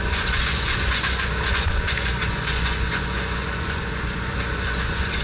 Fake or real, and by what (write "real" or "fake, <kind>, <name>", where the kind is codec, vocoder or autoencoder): fake, vocoder, Vocos